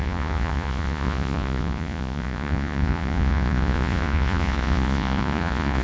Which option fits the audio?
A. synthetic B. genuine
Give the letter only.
A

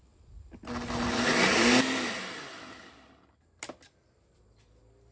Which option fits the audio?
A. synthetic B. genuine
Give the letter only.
B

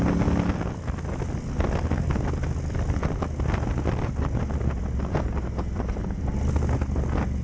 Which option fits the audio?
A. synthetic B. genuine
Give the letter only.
B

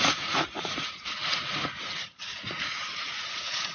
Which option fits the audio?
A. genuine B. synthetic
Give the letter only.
B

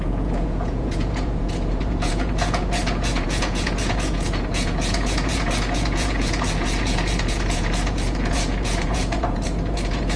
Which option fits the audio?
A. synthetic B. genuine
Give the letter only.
A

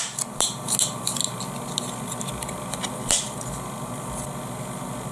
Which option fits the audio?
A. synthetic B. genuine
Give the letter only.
B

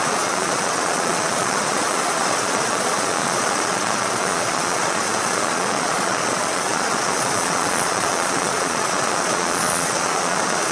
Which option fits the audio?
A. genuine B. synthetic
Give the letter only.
B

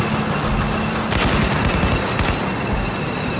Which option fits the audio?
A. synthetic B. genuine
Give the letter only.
B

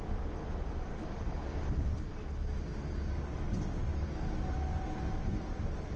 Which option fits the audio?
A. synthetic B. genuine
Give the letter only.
B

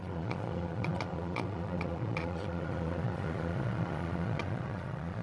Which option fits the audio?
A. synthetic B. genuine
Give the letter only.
A